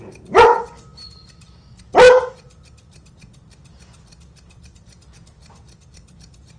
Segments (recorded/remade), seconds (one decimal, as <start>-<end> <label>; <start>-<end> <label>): 0.0-6.6 recorded